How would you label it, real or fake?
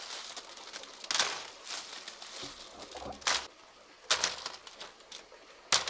real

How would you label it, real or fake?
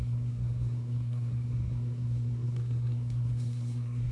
fake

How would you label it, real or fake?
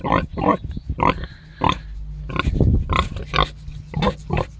real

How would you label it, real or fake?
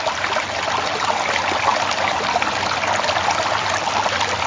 real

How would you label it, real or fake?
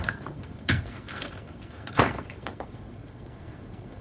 fake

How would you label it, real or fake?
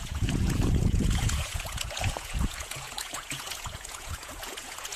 fake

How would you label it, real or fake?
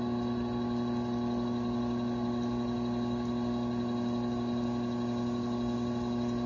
real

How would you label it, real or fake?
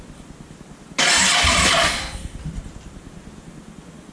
real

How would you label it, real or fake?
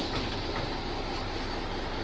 real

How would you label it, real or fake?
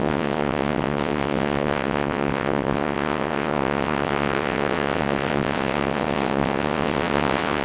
fake